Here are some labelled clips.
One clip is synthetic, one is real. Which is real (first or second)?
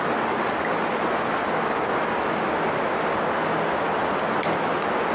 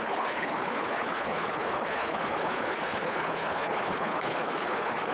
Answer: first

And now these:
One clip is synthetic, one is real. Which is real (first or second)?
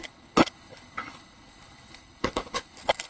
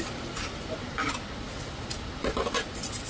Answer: second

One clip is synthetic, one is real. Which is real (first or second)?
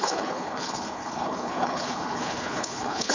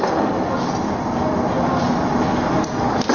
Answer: second